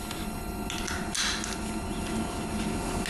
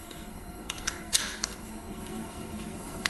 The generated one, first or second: second